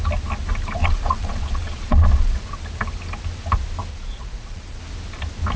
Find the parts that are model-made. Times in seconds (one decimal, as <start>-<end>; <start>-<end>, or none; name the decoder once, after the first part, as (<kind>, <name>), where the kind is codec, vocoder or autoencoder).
0.8-2.4 (vocoder, Vocos); 3.9-4.8